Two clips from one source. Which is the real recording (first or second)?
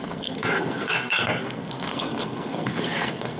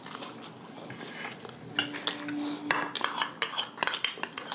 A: second